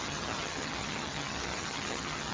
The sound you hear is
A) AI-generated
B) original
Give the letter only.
A